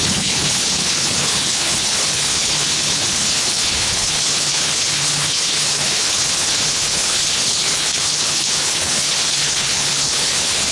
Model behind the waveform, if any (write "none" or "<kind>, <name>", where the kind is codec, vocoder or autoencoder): codec, HILCodec